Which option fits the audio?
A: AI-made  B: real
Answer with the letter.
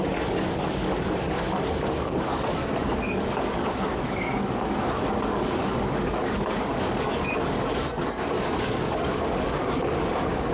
A